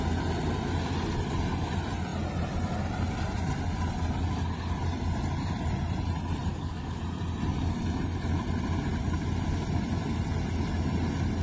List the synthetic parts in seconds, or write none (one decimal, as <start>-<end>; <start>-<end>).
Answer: 6.5-7.0